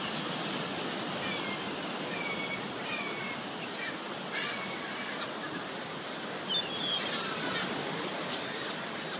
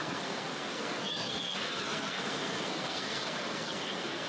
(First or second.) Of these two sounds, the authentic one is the first